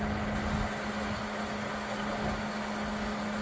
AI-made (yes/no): no